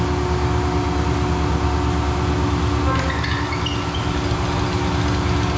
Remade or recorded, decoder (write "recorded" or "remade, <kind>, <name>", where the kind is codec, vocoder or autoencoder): recorded